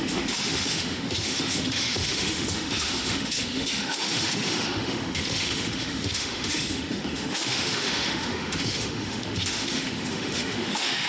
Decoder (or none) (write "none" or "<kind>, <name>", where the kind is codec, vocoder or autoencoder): autoencoder, DAC-VAE